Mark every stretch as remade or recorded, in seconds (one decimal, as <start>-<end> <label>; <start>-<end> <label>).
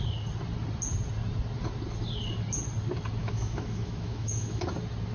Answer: 0.0-3.2 recorded; 3.2-4.6 remade; 4.6-5.1 recorded